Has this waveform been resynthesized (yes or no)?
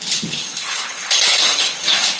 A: yes